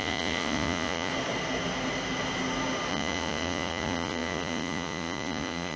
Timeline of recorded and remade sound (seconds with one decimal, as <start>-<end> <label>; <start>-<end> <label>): 0.0-1.1 remade; 1.1-2.9 recorded; 2.9-5.8 remade